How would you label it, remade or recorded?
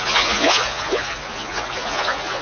remade